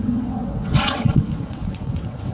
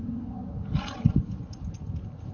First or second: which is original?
second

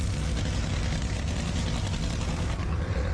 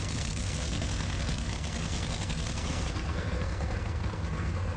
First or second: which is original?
first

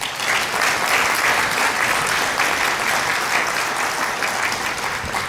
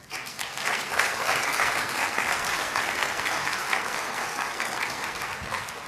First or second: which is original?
first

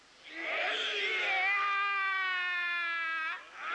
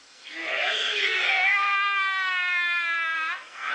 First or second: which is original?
first